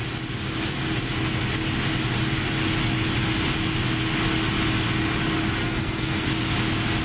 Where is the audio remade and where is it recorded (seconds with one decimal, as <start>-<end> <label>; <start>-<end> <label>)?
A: 0.0-5.6 recorded; 5.6-6.3 remade; 6.3-7.0 recorded